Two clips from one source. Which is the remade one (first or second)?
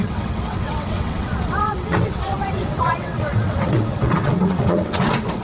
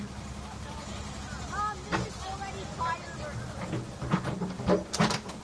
first